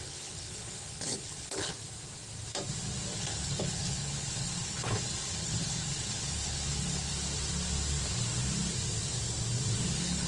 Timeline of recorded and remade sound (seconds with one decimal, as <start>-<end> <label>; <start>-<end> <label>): 0.0-1.7 remade; 1.7-3.1 recorded; 3.1-7.1 remade; 7.1-9.9 recorded; 9.9-10.3 remade